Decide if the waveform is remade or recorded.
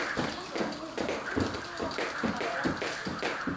recorded